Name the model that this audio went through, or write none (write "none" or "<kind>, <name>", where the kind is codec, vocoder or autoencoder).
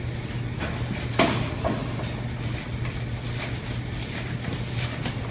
none